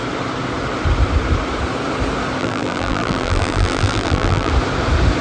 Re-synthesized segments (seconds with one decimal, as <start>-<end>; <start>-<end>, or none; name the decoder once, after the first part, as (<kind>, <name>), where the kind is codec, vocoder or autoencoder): 2.4-4.5 (vocoder, BigVGAN v2)